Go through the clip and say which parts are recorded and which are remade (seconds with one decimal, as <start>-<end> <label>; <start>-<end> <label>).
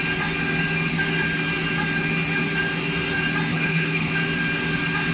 0.0-3.5 recorded; 3.5-4.1 remade; 4.1-5.1 recorded